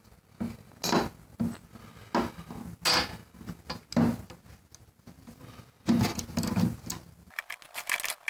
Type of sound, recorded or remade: recorded